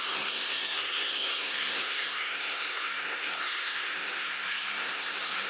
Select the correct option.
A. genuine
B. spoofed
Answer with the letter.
B